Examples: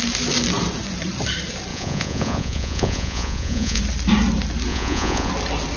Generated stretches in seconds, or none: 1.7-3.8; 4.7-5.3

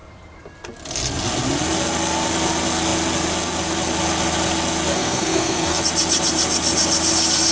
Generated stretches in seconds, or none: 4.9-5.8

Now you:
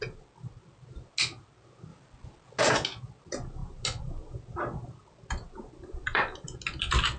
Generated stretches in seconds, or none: none

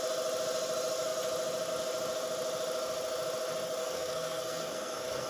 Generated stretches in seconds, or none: 3.8-5.3

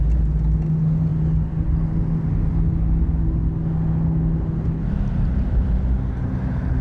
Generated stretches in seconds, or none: none

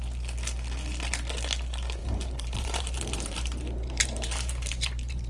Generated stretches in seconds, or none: 2.0-5.3